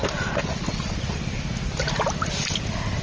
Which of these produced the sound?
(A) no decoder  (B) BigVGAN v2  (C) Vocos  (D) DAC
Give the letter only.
A